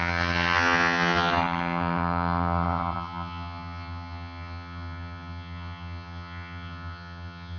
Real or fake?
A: fake